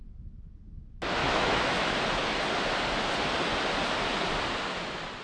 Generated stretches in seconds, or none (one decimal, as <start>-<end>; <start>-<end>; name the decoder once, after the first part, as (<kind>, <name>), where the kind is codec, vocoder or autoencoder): 1.2-1.9 (autoencoder, DAC-VAE)